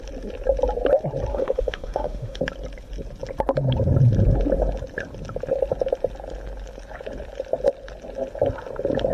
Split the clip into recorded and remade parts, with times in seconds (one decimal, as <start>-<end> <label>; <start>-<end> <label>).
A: 0.0-1.3 recorded; 1.3-2.4 remade; 2.4-9.1 recorded